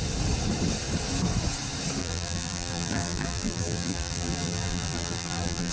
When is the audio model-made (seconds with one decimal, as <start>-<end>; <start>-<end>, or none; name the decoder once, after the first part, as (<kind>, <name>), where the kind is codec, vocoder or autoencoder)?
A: 2.0-5.7 (vocoder, BigVGAN v2)

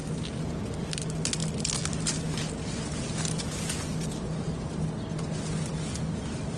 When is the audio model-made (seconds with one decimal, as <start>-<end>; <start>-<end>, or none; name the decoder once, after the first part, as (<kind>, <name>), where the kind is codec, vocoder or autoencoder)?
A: none

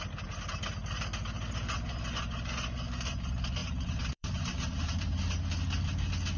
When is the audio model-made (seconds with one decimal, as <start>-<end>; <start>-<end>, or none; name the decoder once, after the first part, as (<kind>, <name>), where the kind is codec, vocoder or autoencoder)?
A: 3.6-5.3 (vocoder, BigVGAN v2)

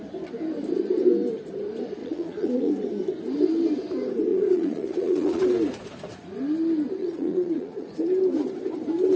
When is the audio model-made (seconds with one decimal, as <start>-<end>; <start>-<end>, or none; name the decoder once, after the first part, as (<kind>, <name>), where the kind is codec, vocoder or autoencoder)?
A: 2.0-2.7 (vocoder, Vocos); 4.3-5.4; 7.0-7.9

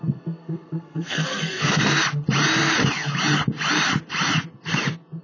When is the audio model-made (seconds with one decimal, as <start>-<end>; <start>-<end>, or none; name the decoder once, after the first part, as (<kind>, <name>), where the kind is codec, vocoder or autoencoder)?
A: 0.0-1.8 (codec, SNAC)

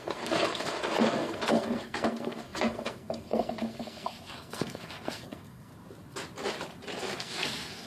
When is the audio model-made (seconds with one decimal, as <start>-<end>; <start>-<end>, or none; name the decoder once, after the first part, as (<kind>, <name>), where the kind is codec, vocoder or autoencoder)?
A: 0.0-5.7 (codec, SNAC); 7.0-7.9